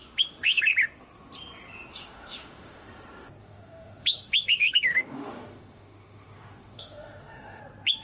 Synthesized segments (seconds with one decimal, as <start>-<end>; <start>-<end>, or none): 0.0-0.6; 1.9-2.9; 3.4-7.6